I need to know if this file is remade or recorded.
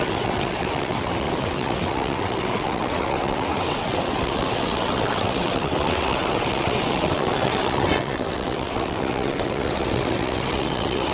remade